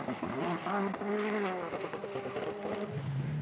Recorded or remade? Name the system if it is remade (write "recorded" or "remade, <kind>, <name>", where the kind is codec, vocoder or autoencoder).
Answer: recorded